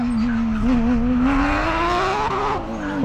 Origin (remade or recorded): recorded